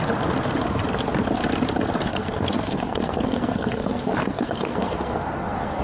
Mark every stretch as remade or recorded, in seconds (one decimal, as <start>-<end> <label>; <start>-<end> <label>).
0.0-2.1 recorded; 2.1-5.8 remade